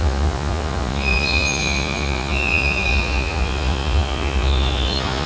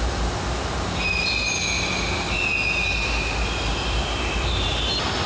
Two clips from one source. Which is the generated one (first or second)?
first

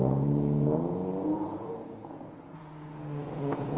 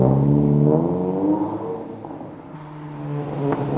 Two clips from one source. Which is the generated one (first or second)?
first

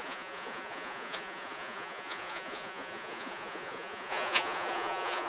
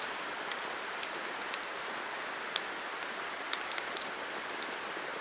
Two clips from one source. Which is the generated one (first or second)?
first